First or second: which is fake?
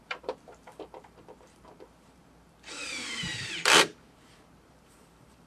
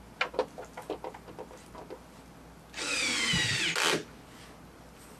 first